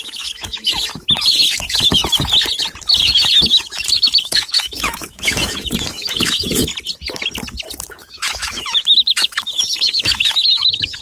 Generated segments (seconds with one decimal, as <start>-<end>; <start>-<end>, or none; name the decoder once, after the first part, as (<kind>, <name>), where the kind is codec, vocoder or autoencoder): 0.0-2.0 (autoencoder, DAC-VAE); 2.8-6.7; 7.8-11.0